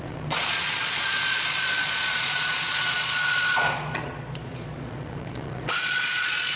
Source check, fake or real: fake